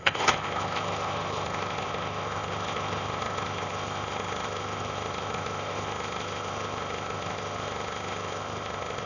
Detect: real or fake fake